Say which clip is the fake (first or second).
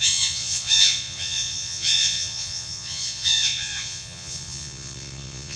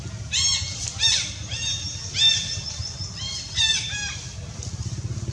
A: first